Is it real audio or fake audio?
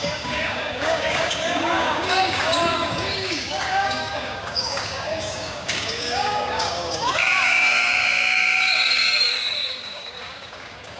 fake